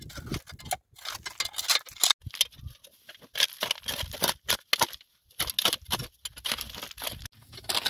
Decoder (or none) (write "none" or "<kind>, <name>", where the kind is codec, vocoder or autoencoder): none